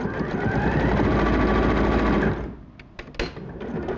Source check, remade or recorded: recorded